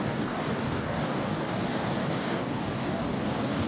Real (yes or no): no